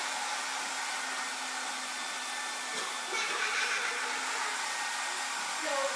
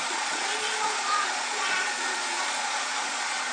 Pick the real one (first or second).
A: first